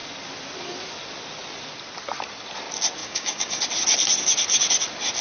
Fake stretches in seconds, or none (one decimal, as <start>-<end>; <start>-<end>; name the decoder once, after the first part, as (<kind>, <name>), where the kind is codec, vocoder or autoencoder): 3.0-3.6 (codec, DAC)